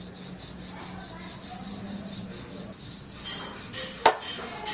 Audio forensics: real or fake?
real